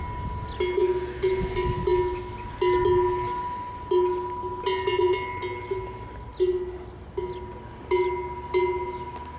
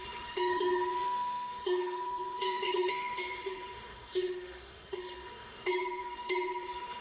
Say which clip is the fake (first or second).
second